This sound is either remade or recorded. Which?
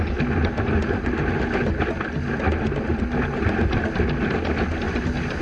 recorded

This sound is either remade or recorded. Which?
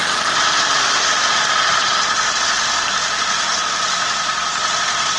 recorded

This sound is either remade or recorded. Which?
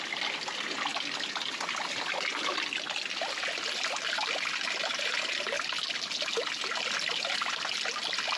recorded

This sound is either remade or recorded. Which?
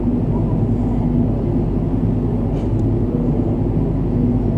recorded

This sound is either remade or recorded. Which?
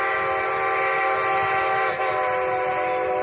recorded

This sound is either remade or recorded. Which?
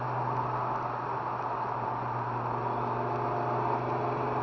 recorded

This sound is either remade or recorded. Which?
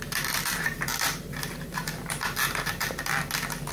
remade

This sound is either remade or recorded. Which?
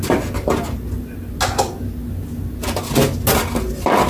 recorded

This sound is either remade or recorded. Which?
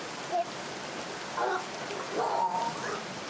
remade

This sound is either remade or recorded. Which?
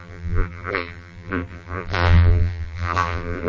remade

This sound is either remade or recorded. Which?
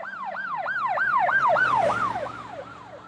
remade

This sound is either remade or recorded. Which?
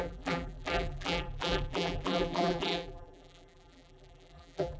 remade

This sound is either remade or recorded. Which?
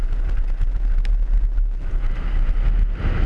recorded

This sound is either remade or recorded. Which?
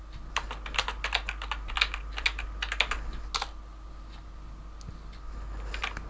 recorded